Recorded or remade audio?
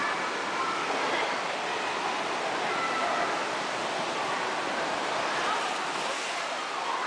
recorded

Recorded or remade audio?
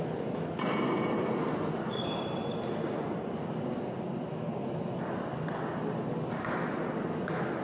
recorded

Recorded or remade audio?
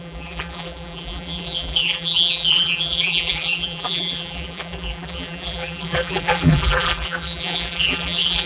remade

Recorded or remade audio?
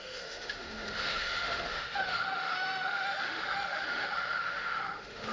remade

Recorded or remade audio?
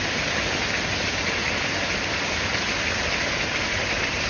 recorded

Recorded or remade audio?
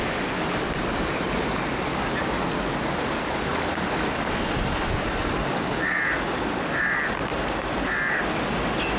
recorded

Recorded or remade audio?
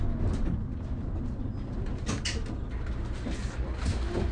recorded